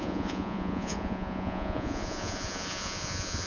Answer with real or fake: fake